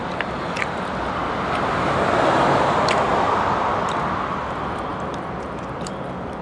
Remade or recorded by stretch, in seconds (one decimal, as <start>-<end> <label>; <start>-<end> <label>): 0.0-6.4 recorded

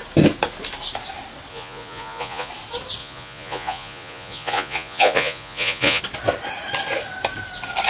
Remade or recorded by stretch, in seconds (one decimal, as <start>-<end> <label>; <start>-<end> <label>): 0.0-1.5 recorded; 1.5-2.5 remade; 2.5-3.0 recorded; 3.0-6.0 remade; 6.0-7.9 recorded

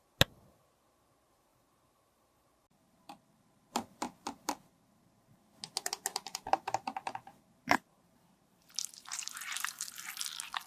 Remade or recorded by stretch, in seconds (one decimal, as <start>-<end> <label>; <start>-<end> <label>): 0.0-1.5 recorded; 1.5-5.0 remade; 5.0-6.1 recorded; 6.1-9.8 remade; 9.8-10.7 recorded

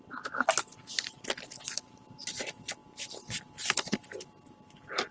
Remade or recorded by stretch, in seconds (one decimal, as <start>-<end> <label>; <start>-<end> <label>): 0.0-5.1 recorded